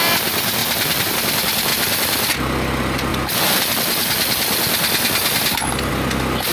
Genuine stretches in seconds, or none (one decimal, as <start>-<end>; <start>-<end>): 0.0-6.5